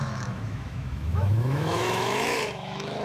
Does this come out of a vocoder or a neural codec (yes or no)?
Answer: yes